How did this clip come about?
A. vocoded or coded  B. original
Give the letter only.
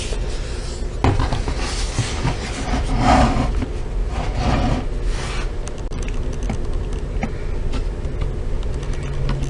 B